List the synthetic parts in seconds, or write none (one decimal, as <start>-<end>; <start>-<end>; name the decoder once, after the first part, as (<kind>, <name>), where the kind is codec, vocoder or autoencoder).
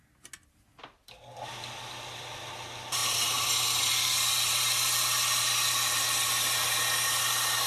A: 3.0-3.9 (vocoder, BigVGAN v2)